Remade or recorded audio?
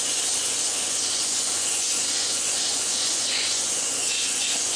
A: remade